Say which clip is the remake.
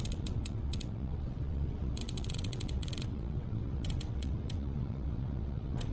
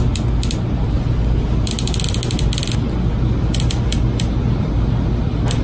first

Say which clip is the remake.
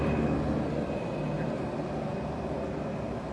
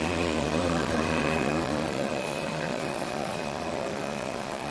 second